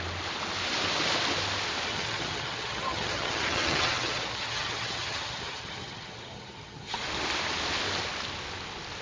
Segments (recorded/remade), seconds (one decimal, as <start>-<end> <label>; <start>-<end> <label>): 0.0-1.9 recorded; 1.9-7.0 remade; 7.0-9.0 recorded